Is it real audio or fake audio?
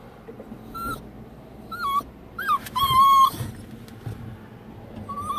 real